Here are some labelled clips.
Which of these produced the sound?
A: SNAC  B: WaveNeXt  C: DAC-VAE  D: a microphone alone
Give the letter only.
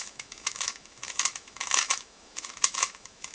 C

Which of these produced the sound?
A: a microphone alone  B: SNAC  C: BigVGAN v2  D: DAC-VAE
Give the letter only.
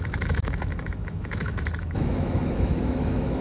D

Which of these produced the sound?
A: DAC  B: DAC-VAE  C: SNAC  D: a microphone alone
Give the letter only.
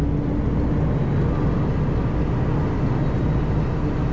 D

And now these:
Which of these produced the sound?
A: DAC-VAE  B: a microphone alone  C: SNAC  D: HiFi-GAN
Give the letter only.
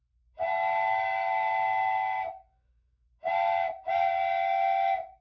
A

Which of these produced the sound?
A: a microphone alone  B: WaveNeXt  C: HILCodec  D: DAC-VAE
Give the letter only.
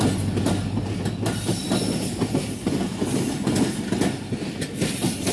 A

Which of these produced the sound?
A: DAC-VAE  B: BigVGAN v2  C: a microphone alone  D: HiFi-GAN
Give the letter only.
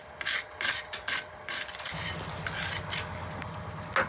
C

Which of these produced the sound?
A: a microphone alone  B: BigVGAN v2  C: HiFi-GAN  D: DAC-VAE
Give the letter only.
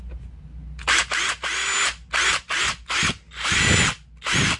A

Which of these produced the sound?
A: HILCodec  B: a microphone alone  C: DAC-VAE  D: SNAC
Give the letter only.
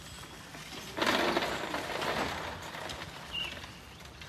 B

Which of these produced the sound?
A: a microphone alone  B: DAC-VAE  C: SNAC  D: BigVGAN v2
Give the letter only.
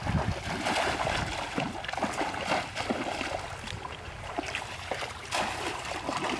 A